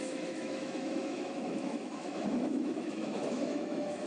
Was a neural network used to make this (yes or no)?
yes